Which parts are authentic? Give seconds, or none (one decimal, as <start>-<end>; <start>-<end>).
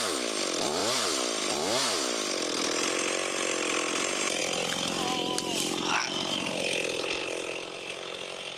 0.0-8.6